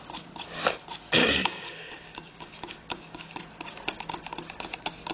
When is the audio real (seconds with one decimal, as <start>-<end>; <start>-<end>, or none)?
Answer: 0.0-1.2; 3.4-5.1

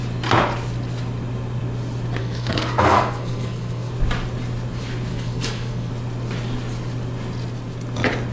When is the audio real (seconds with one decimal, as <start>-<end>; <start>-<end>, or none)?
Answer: 0.0-2.2; 3.9-5.1; 5.9-8.3